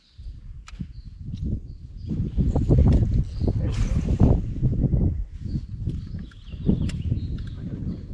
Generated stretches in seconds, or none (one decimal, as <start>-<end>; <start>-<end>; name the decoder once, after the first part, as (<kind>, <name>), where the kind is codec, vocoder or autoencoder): none